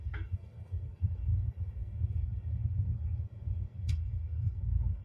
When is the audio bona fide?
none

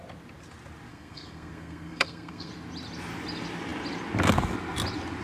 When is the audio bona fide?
0.0-0.9; 2.5-5.2